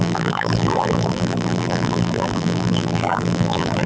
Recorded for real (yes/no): no